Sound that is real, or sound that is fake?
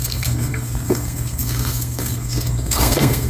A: fake